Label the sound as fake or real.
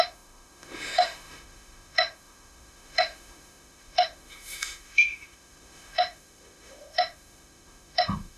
fake